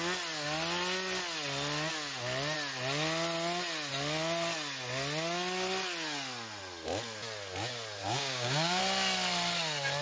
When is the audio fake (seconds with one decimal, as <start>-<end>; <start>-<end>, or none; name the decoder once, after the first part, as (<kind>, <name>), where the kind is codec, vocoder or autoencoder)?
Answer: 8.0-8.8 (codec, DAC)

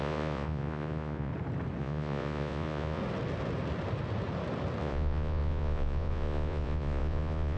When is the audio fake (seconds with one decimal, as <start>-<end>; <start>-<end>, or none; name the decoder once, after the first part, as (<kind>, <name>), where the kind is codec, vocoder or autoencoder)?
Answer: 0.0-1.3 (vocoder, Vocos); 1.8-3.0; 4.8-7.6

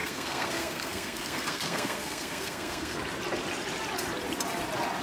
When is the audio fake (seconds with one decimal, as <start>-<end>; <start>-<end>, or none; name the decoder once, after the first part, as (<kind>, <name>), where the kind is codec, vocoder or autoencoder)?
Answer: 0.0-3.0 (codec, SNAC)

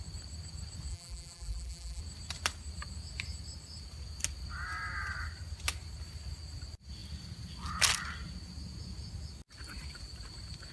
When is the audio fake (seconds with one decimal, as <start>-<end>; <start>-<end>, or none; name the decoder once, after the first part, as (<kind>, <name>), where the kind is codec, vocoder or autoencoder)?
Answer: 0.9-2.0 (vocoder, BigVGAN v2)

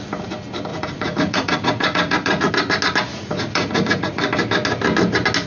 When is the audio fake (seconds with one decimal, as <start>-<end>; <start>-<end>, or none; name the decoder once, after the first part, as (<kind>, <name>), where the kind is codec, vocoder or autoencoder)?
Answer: 0.7-2.5 (vocoder, Vocos); 3.1-4.2

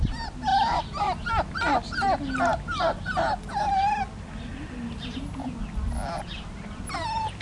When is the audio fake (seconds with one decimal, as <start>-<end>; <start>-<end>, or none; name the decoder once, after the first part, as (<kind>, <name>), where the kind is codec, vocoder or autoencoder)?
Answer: none